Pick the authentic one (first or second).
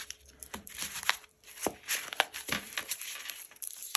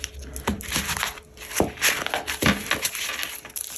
second